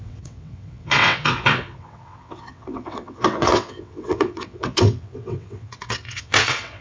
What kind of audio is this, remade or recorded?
remade